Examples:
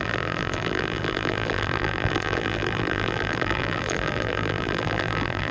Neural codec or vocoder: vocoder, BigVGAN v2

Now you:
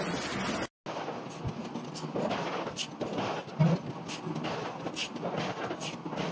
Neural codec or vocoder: none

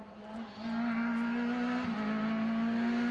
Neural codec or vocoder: none